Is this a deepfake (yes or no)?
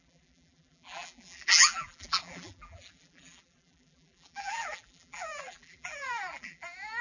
yes